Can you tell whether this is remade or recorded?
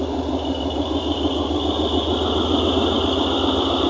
recorded